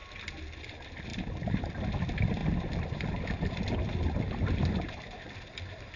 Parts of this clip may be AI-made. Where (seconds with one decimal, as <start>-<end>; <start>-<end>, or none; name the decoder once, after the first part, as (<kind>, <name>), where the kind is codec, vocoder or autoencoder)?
0.0-0.6 (vocoder, BigVGAN v2); 1.1-1.6; 2.4-6.0